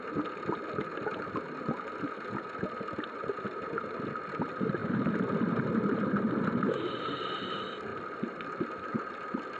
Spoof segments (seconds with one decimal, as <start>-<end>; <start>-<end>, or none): 7.9-9.6